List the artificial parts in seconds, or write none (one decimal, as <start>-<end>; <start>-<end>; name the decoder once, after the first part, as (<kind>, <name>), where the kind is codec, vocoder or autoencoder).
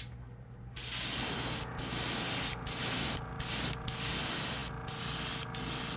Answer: none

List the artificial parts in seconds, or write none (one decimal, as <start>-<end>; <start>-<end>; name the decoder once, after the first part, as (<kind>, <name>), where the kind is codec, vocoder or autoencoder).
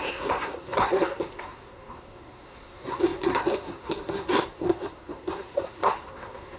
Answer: 0.0-6.6 (codec, SNAC)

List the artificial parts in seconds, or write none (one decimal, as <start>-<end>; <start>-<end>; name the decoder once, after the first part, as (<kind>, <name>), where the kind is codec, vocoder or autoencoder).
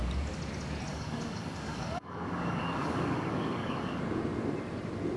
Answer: 0.9-4.0 (codec, DAC)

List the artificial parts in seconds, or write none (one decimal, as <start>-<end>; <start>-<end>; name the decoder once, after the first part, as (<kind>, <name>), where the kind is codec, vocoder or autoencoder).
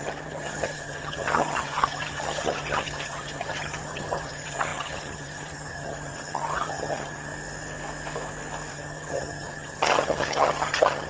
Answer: 0.0-7.3 (vocoder, HiFi-GAN); 8.7-11.1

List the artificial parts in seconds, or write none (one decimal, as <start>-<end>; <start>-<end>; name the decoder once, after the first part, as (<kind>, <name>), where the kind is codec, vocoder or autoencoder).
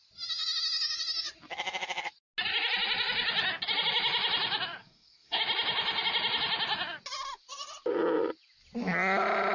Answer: 4.8-5.4 (codec, SNAC)